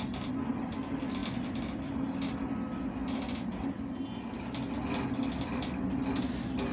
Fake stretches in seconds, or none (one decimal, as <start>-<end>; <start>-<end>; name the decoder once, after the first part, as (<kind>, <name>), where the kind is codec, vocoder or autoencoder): none